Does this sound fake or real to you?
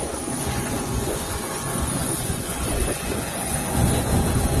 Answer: fake